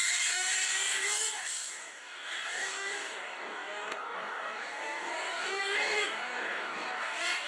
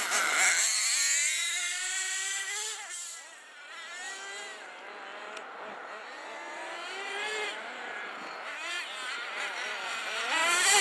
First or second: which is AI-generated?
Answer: first